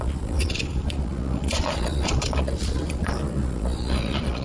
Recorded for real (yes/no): no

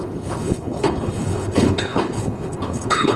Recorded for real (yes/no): no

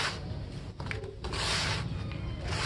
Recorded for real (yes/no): yes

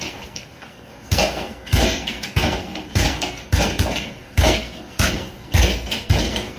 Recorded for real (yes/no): no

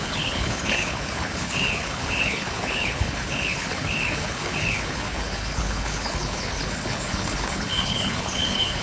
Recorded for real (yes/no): no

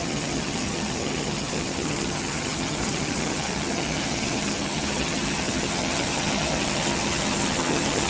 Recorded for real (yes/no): no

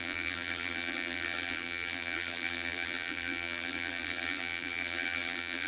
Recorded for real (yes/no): no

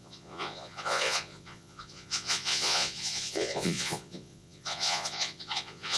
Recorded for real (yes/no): no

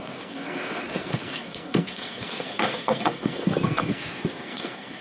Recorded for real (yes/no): no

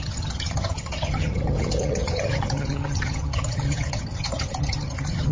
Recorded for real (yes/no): no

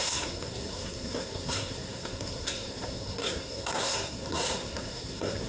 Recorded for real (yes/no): no